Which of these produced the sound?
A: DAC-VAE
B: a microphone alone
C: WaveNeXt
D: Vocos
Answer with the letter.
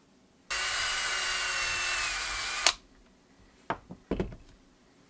B